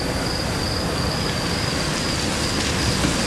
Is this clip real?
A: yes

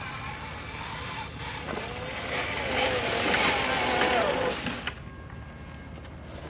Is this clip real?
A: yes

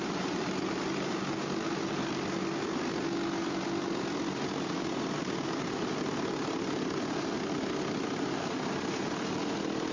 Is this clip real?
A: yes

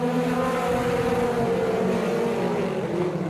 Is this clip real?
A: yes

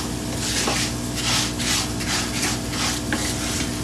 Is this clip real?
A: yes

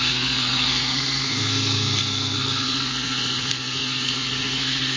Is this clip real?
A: no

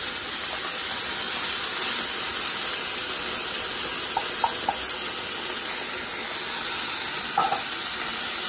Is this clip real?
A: yes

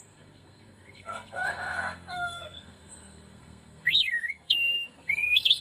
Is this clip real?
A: no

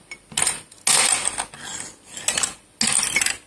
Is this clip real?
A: yes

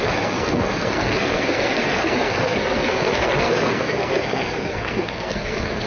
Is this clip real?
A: no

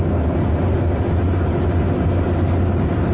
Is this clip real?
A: yes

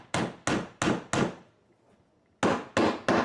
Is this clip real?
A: yes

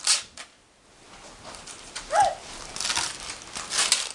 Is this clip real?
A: yes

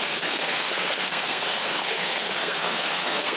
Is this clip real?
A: no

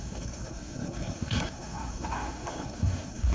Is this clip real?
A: no